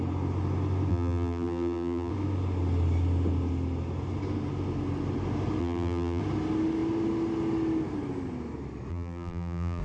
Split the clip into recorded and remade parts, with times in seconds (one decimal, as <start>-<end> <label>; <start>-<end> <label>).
0.0-0.9 recorded; 0.9-2.1 remade; 2.1-5.6 recorded; 5.6-6.2 remade; 6.2-8.9 recorded; 8.9-9.8 remade